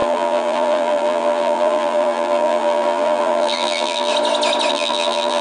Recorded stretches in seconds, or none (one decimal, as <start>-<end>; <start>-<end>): 4.1-4.7